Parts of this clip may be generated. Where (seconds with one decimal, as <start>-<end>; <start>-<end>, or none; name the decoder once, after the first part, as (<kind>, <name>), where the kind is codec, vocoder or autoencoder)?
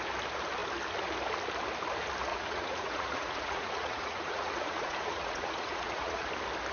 2.3-6.3 (vocoder, Vocos)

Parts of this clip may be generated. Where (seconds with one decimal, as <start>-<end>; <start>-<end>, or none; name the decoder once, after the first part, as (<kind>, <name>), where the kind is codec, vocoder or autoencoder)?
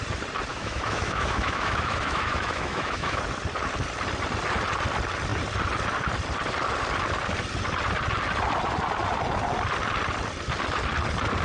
0.5-3.2 (autoencoder, DAC-VAE)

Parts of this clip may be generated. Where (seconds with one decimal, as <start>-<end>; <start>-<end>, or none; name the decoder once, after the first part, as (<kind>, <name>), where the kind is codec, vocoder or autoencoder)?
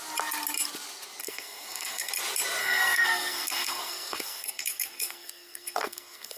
1.2-2.1 (codec, SNAC); 2.6-6.4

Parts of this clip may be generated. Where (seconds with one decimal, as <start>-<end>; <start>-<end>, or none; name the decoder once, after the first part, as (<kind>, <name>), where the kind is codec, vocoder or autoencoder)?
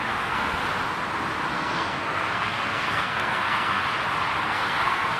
0.0-0.6 (codec, SNAC); 1.5-3.8; 4.4-5.2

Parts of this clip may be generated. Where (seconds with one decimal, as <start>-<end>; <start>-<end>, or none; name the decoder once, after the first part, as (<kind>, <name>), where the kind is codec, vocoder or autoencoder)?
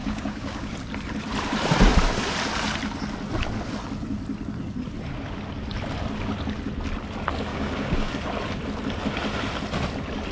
0.0-0.7 (codec, DAC); 7.5-8.1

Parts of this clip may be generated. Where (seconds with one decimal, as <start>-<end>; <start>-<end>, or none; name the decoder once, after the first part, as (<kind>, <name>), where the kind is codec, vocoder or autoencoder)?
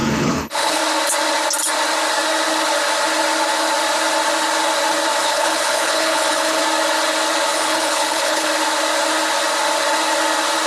0.0-0.8 (codec, HILCodec); 5.2-6.6; 7.5-8.5